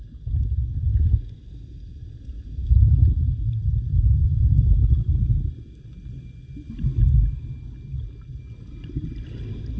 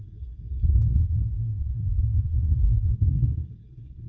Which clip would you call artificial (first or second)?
second